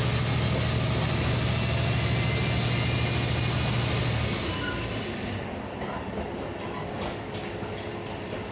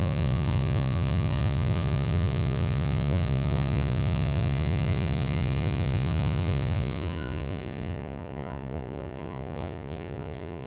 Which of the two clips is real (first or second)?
first